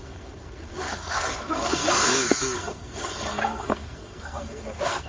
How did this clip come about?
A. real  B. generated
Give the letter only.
B